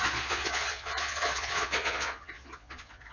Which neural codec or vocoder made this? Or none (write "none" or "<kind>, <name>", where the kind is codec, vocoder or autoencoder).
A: vocoder, Vocos